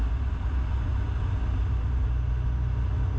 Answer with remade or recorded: recorded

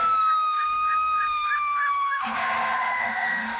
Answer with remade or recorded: remade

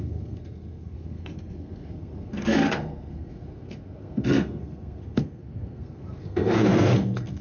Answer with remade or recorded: remade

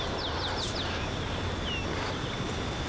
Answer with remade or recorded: recorded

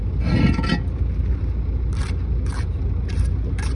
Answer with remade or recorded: recorded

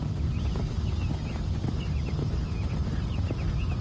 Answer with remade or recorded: recorded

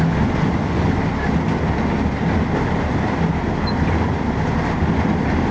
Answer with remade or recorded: recorded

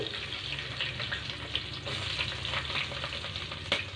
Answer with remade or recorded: recorded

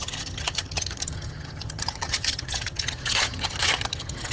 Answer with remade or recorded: remade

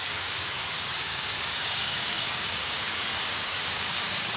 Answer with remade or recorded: remade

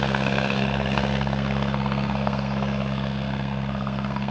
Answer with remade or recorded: remade